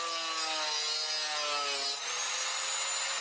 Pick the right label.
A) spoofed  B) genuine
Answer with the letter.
B